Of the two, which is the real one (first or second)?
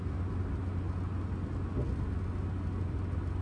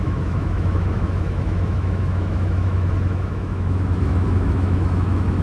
first